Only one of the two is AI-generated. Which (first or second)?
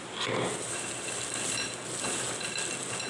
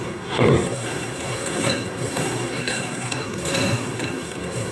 second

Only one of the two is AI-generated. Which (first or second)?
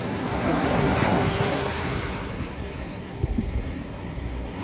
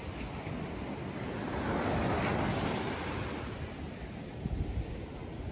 first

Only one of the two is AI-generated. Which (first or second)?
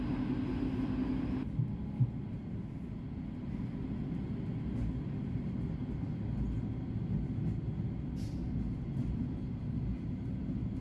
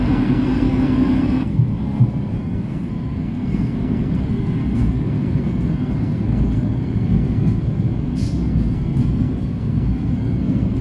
second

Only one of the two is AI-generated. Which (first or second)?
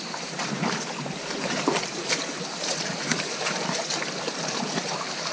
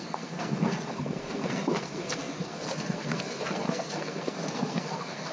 second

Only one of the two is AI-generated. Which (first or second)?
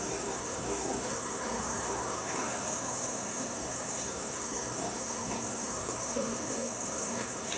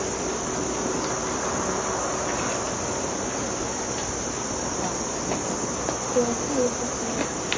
first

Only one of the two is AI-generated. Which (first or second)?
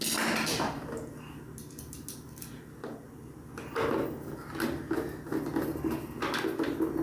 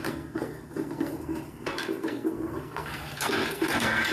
second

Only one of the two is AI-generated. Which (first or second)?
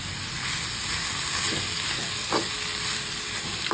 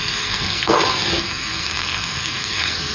second